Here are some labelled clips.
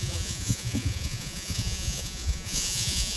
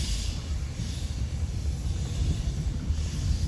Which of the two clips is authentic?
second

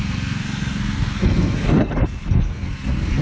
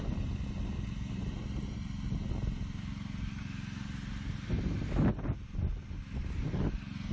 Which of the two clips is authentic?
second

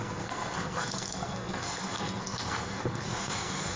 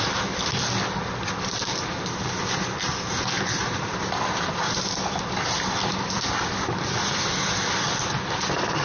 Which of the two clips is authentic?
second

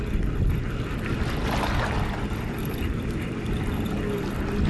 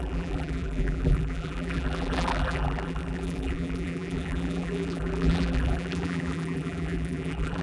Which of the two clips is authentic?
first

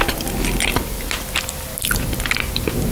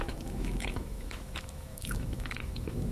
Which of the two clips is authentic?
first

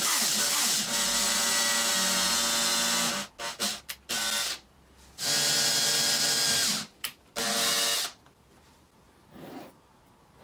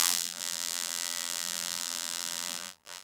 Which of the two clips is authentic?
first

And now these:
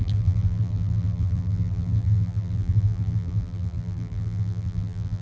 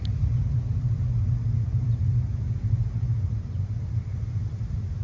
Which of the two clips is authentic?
second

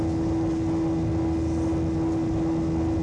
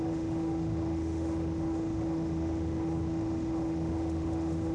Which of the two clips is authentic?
first